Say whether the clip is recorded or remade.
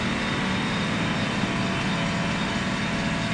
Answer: recorded